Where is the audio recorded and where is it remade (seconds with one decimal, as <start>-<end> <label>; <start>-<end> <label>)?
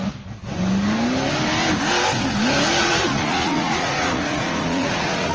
0.0-2.8 recorded; 2.8-5.3 remade